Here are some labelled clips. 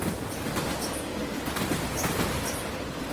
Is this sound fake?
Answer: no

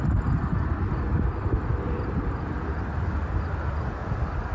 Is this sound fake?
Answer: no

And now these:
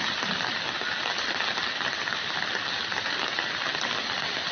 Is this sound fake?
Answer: no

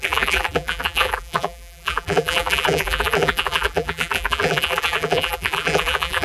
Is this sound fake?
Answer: yes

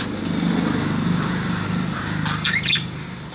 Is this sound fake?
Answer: no